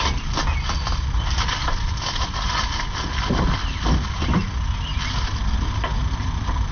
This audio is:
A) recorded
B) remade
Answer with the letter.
A